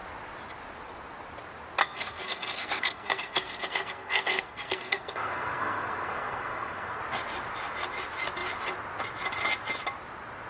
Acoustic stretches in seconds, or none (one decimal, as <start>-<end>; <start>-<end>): 0.0-1.8; 7.0-10.5